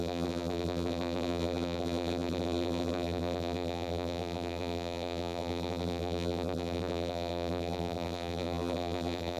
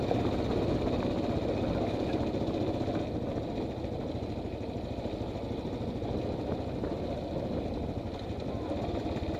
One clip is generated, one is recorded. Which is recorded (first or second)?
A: second